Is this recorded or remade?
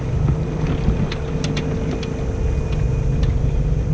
recorded